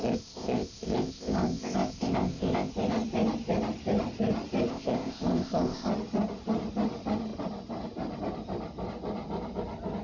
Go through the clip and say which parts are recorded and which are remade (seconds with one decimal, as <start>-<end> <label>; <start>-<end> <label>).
0.0-2.7 remade; 2.7-4.7 recorded; 4.7-5.9 remade; 5.9-10.0 recorded